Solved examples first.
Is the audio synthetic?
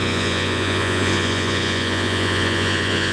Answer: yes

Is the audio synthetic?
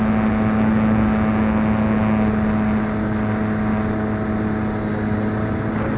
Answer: no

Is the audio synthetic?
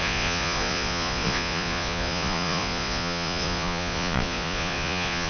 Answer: yes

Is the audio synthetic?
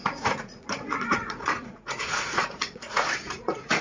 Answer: yes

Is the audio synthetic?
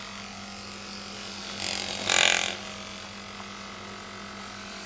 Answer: no